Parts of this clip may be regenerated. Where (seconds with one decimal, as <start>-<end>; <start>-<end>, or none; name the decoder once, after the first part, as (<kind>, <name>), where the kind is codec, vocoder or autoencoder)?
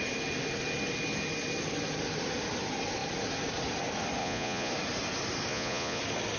4.2-4.7 (vocoder, Vocos); 5.5-6.0